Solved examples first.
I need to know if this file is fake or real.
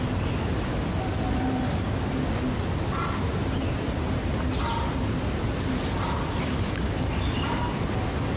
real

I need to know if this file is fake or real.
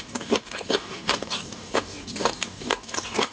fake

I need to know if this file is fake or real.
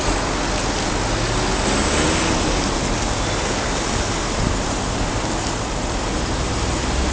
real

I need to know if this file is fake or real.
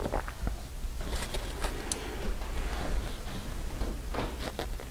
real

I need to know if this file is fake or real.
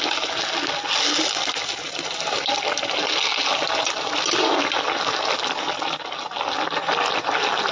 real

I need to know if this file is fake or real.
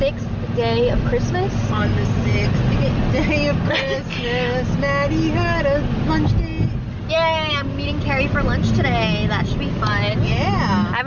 real